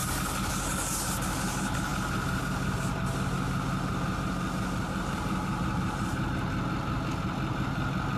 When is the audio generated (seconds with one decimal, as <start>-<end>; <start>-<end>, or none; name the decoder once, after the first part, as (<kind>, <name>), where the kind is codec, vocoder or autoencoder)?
none